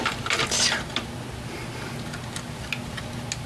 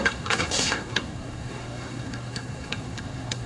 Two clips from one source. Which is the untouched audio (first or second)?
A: first